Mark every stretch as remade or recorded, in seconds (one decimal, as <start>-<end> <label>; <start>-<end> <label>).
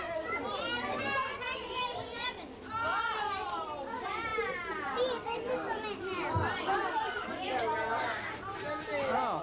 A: 0.0-9.4 recorded